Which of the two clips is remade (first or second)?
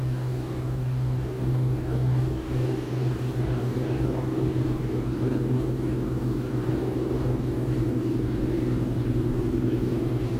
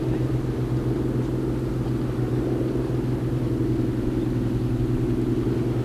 first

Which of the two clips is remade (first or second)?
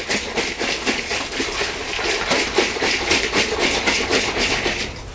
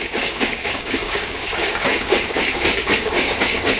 second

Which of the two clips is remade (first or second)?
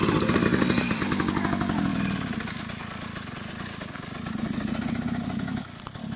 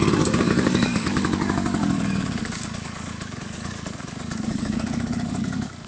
second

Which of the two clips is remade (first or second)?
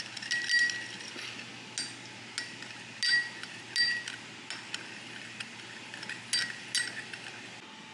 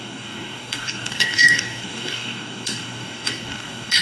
second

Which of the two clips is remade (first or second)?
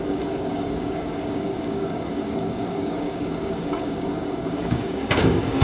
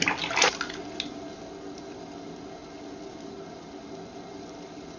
first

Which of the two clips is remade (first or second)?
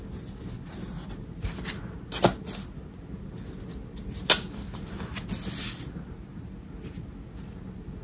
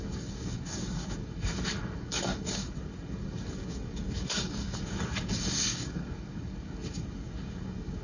second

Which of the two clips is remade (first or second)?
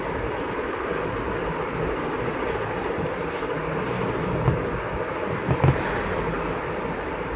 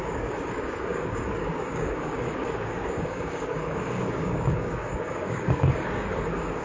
second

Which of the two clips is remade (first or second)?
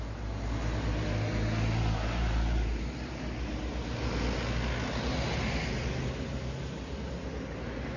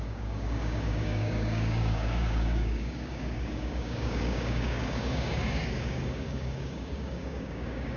second